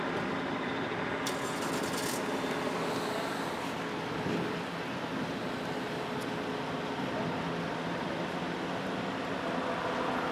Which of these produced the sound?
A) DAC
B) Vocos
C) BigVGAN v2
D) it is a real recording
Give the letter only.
D